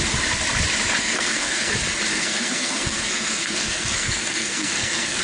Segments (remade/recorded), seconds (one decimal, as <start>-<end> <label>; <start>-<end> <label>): 0.0-1.0 recorded; 1.0-1.7 remade; 1.7-2.1 recorded; 2.1-5.2 remade